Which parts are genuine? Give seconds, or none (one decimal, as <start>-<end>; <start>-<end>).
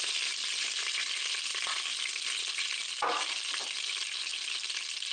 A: 0.0-5.1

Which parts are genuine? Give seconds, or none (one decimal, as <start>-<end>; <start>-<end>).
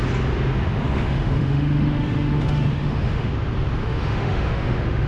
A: 0.0-0.8; 3.3-3.8